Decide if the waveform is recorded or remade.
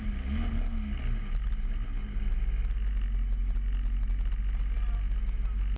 recorded